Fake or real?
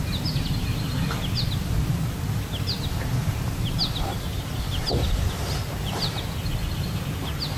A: real